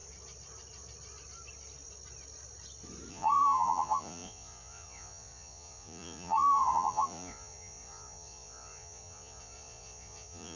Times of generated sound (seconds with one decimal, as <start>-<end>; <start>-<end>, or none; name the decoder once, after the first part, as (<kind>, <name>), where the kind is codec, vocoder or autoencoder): 3.1-10.6 (vocoder, Vocos)